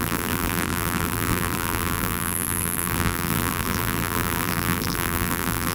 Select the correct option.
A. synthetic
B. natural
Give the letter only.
A